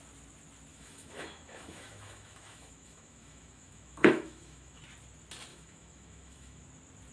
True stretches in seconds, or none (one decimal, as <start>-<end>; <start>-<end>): 0.0-0.7; 4.8-5.5; 6.6-7.1